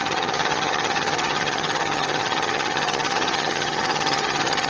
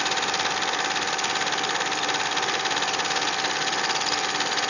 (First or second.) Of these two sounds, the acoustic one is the second